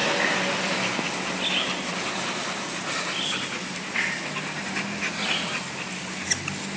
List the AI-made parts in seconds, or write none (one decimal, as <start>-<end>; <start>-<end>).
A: none